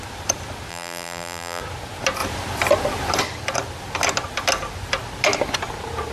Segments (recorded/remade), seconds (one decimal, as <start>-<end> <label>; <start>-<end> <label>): 0.0-0.7 recorded; 0.7-1.6 remade; 1.6-6.1 recorded